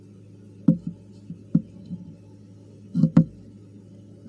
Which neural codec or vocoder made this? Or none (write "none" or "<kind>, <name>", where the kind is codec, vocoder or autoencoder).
none